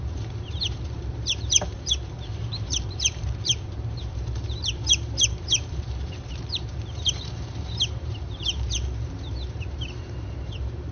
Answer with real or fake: fake